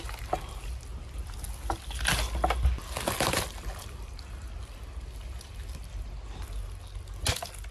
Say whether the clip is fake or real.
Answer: real